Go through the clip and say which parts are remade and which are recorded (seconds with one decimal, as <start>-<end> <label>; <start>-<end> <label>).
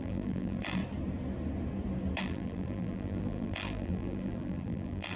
0.0-0.8 remade; 0.8-2.2 recorded; 2.2-5.2 remade